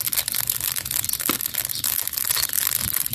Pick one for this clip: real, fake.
real